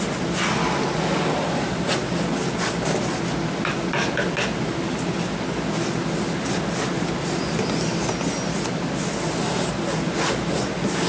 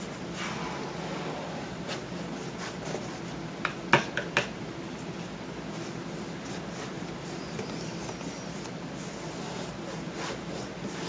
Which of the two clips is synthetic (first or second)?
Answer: second